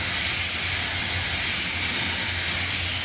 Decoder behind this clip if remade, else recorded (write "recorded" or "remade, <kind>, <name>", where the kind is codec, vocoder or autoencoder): recorded